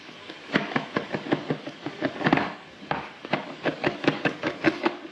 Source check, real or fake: fake